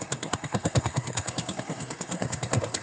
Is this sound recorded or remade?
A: remade